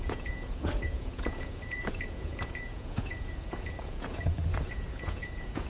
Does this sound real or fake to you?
fake